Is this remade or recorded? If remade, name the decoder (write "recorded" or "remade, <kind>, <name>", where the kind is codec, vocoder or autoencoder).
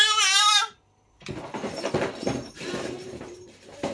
remade, vocoder, BigVGAN v2